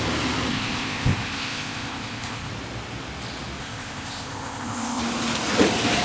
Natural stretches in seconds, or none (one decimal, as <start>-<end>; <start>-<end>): 0.0-0.5; 2.5-3.6; 5.0-6.0